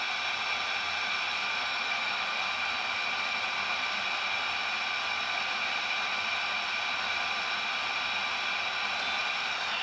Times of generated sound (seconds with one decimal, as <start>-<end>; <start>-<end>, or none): 1.7-2.3